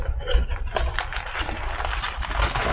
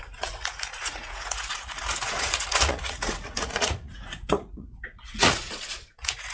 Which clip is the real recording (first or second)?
first